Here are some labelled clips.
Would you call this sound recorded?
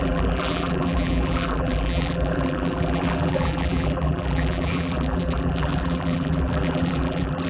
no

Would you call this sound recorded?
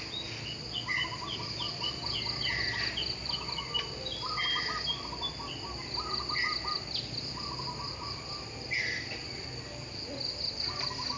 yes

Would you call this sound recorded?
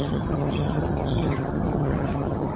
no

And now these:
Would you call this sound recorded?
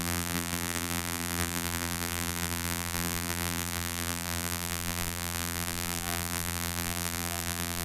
no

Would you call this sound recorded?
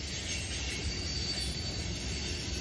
yes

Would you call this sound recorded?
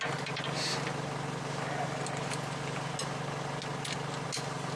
yes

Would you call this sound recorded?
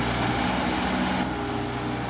yes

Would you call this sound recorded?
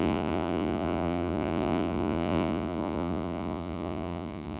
no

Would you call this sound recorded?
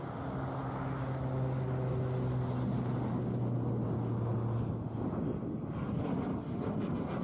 yes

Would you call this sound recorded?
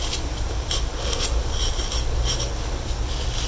yes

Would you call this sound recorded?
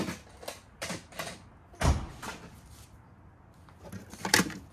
yes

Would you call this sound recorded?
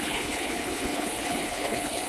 no